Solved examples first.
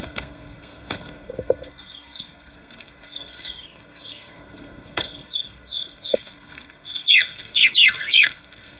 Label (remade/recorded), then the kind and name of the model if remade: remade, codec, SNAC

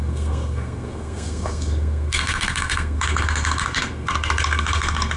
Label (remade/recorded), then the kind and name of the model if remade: remade, codec, SNAC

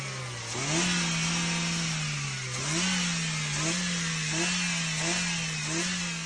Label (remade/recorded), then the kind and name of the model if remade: recorded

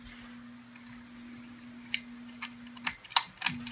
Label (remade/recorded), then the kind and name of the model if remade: recorded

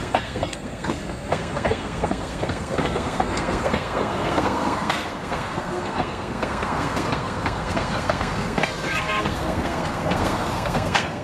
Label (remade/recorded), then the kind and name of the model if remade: remade, codec, SNAC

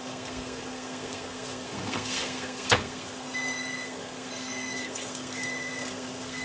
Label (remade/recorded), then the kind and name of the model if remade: remade, codec, SNAC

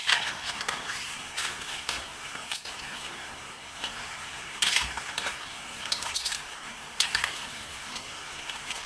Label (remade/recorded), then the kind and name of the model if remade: remade, codec, SNAC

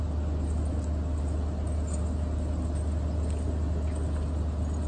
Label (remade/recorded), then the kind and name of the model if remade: recorded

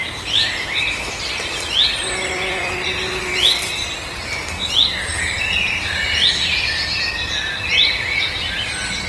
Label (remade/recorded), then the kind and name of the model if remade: recorded